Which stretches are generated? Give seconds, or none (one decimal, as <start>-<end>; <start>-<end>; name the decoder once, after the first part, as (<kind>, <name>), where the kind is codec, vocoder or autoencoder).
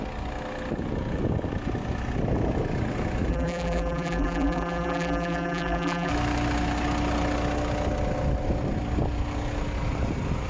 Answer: 3.3-6.1 (vocoder, BigVGAN v2)